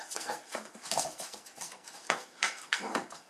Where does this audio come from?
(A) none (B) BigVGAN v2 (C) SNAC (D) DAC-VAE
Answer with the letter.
C